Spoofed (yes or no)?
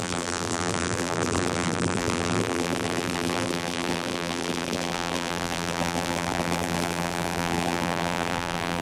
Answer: yes